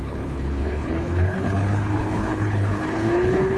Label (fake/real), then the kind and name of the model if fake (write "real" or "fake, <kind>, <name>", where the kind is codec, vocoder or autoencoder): fake, codec, HILCodec